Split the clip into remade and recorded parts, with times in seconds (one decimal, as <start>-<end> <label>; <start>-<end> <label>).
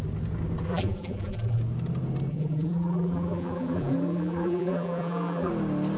0.0-0.7 recorded; 0.7-1.6 remade; 1.6-2.3 recorded; 2.3-5.5 remade; 5.5-6.0 recorded